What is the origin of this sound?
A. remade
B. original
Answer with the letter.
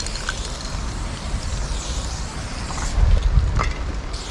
B